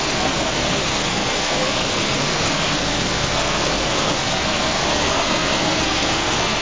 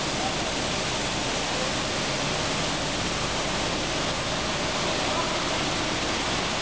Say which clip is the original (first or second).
second